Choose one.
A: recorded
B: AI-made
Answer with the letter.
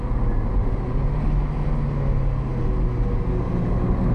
A